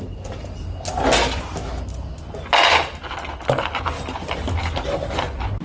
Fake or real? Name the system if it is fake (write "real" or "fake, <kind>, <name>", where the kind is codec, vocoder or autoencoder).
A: real